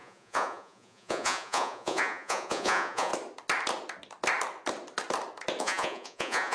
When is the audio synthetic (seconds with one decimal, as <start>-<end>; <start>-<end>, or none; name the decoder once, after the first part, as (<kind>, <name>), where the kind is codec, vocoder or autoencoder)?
0.0-3.1 (vocoder, Vocos); 5.6-6.5